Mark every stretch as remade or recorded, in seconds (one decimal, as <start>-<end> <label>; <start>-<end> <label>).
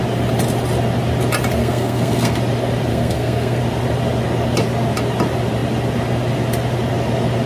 0.0-1.6 recorded; 1.6-2.4 remade; 2.4-2.9 recorded; 2.9-3.6 remade; 3.6-7.5 recorded